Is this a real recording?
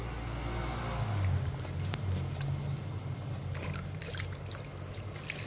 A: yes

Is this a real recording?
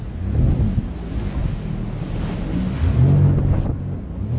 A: yes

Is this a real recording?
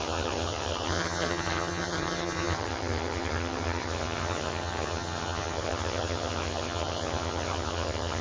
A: no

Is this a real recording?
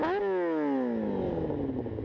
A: yes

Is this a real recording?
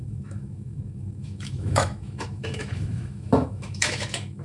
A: no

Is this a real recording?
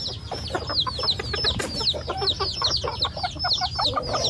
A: yes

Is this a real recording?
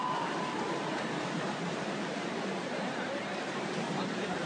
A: no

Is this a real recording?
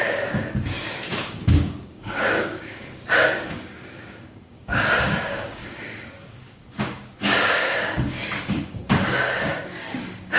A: no